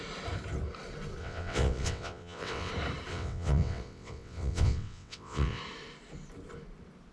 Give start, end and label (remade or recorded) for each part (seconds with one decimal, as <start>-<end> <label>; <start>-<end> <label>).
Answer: 0.0-1.2 recorded; 1.2-2.7 remade; 2.7-3.1 recorded; 3.1-5.6 remade; 5.6-7.1 recorded